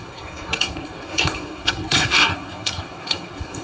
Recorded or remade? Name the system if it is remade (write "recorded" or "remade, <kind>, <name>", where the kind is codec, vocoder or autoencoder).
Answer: remade, codec, SNAC